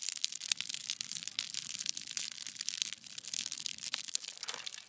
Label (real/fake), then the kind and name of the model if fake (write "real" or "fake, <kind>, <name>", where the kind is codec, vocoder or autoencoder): fake, vocoder, BigVGAN v2